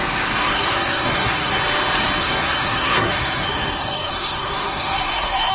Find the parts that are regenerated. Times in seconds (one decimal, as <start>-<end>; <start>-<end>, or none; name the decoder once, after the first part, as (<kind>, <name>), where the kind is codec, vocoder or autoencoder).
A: 0.4-1.6 (codec, SNAC); 2.2-5.5